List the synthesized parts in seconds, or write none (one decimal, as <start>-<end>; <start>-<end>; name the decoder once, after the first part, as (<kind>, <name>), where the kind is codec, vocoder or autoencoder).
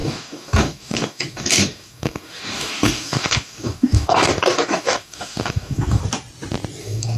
0.0-6.0 (codec, DAC); 6.8-7.2